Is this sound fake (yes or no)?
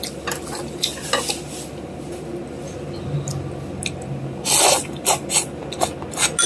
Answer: no